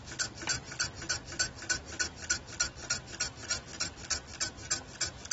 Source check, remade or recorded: recorded